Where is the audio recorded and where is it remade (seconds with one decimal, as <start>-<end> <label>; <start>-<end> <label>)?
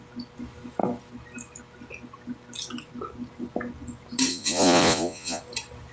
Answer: 0.0-4.3 recorded; 4.3-5.4 remade; 5.4-5.9 recorded